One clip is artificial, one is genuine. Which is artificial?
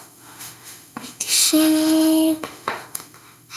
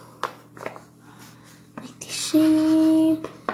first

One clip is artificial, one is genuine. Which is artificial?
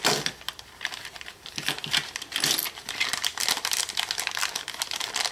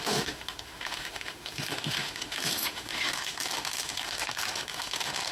second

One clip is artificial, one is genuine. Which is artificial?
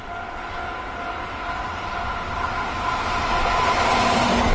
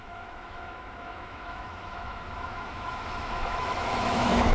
second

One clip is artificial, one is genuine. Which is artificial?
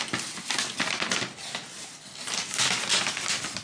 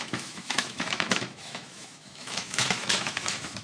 second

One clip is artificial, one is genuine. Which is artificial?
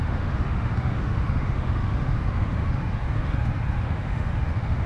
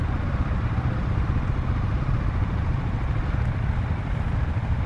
first